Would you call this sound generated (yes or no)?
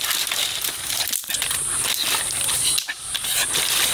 no